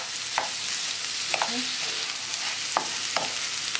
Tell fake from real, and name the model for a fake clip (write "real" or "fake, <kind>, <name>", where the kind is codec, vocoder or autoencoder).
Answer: real